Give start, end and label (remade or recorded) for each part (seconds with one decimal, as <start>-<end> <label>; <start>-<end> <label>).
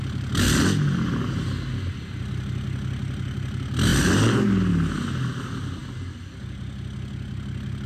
0.0-7.9 recorded